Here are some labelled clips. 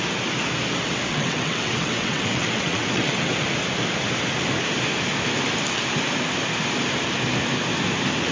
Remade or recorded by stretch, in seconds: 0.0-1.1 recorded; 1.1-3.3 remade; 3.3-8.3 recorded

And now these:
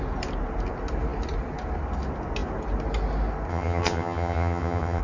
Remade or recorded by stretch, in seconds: 0.0-3.5 recorded; 3.5-5.0 remade

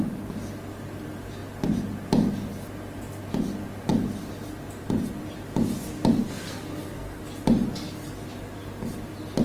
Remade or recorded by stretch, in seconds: 0.0-6.2 recorded; 6.2-7.2 remade; 7.2-9.4 recorded

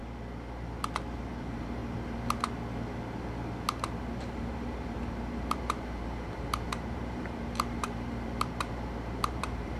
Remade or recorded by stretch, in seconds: 0.0-1.2 recorded; 1.2-1.8 remade; 1.8-4.2 recorded; 4.2-9.8 remade

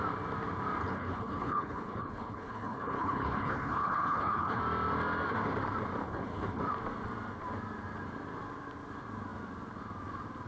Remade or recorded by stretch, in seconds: 0.0-0.8 recorded; 0.8-4.6 remade; 4.6-6.0 recorded; 6.0-6.6 remade; 6.6-10.5 recorded

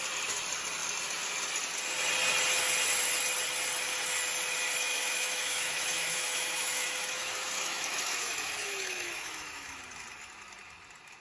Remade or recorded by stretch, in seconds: 0.0-4.8 recorded; 4.8-9.8 remade; 9.8-11.2 recorded